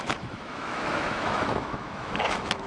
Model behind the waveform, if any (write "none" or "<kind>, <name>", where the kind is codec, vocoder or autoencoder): autoencoder, DAC-VAE